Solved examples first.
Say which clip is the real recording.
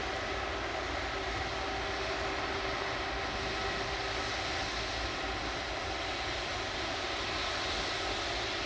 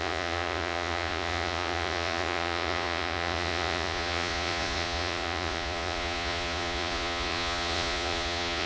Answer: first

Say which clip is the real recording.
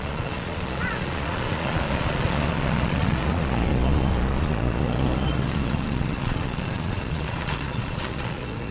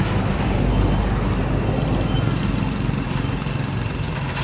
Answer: second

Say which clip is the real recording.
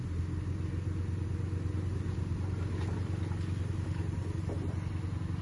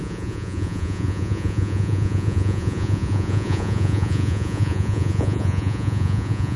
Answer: first